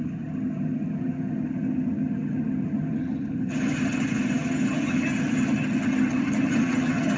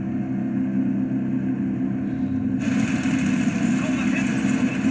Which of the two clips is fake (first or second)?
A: first